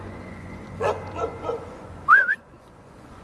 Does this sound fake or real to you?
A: fake